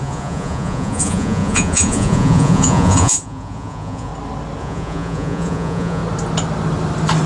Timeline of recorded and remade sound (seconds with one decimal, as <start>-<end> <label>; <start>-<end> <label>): 0.0-4.1 remade; 4.1-4.6 recorded; 4.6-6.0 remade; 6.0-7.3 recorded